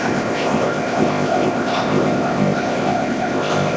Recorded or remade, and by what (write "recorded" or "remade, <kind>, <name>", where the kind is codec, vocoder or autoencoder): remade, codec, ZipCodec